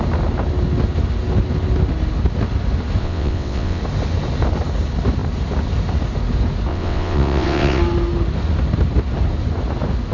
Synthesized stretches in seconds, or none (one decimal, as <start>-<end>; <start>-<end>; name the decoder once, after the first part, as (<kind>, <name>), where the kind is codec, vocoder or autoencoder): 3.0-3.8 (vocoder, WaveNeXt); 6.7-7.8